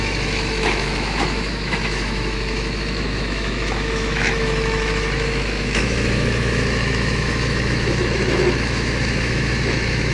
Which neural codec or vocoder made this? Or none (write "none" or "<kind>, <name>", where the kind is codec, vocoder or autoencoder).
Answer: autoencoder, DAC-VAE